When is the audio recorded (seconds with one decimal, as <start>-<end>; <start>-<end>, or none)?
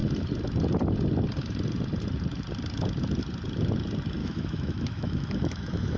0.0-4.2